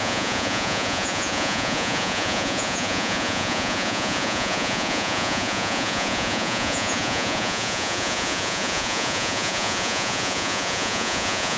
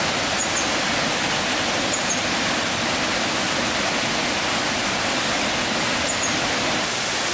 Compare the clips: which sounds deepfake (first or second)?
first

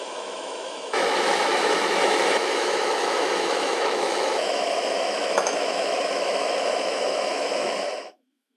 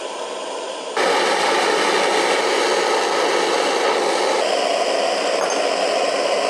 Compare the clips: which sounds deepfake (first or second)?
first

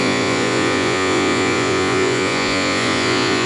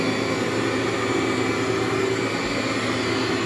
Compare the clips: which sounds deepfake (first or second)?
first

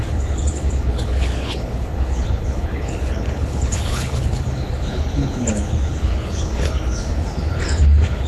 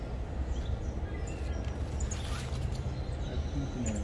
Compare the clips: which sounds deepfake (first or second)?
first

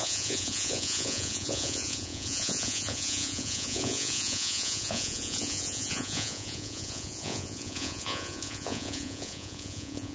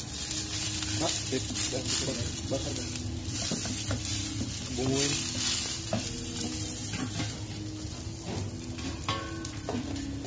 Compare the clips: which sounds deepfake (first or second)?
first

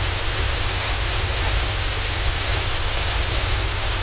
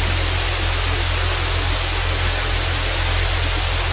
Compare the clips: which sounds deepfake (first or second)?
first